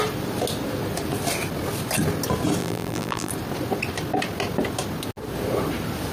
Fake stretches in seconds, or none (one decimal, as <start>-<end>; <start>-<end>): 2.6-3.3